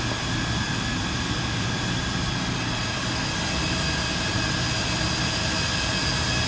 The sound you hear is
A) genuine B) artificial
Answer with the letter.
A